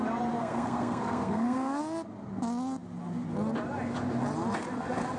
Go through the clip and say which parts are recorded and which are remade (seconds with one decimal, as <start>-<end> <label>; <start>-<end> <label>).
0.0-0.4 recorded; 0.4-1.8 remade; 1.8-5.2 recorded

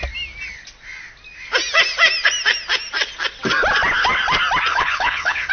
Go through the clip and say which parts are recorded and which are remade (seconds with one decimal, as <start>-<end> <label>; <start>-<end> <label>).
0.0-4.7 recorded; 4.7-5.5 remade

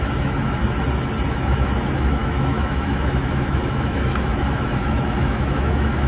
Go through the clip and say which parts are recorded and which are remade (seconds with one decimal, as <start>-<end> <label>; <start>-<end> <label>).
0.0-0.6 remade; 0.6-1.3 recorded; 1.3-6.1 remade

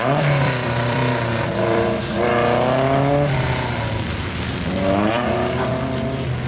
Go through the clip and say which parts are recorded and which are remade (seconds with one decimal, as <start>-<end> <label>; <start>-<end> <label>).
0.0-1.0 remade; 1.0-1.6 recorded; 1.6-2.3 remade; 2.3-5.1 recorded; 5.1-5.7 remade; 5.7-6.5 recorded